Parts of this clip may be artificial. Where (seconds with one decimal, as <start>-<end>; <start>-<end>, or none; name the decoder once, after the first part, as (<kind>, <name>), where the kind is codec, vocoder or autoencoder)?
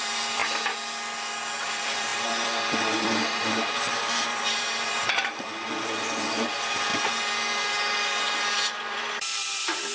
0.0-0.4 (vocoder, BigVGAN v2); 1.6-6.9; 7.9-9.9